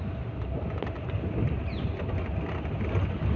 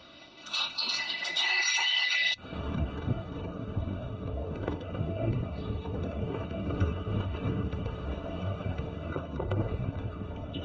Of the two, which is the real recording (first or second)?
first